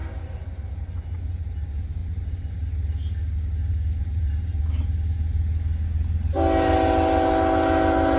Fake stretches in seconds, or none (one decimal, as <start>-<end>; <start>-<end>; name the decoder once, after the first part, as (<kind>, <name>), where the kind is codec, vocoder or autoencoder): 3.7-4.6 (vocoder, BigVGAN v2)